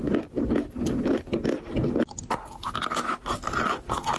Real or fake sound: real